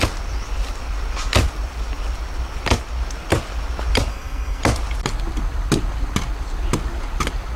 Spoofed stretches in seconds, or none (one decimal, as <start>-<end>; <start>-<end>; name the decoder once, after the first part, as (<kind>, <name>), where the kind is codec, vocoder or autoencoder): 4.1-4.6 (codec, SNAC)